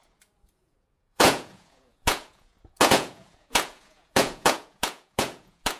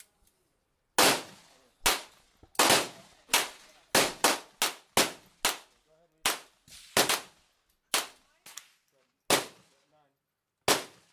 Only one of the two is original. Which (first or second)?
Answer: second